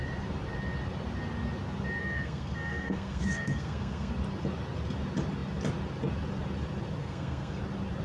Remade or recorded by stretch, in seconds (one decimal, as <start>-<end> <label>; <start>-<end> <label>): 0.0-2.0 recorded; 2.0-4.1 remade; 4.1-7.0 recorded; 7.0-7.6 remade; 7.6-8.0 recorded